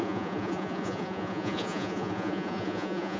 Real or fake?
fake